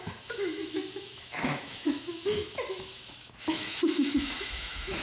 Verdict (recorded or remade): remade